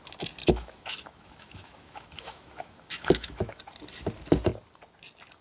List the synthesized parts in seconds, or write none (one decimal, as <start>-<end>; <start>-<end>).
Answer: 0.4-3.6